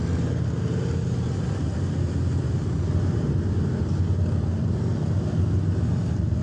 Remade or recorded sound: recorded